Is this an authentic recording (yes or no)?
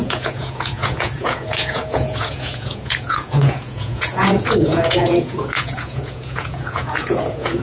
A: no